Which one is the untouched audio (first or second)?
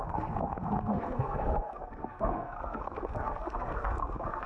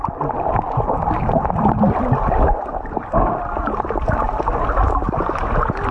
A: second